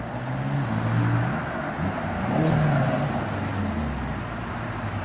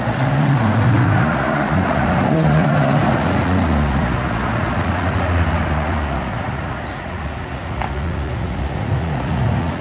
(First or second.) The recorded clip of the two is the first